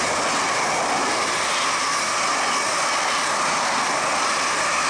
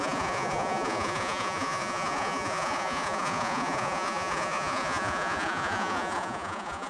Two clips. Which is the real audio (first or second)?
first